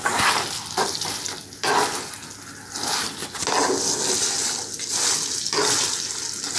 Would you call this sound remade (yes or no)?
no